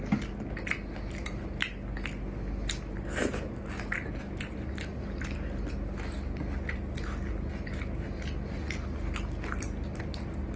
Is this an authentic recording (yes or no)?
yes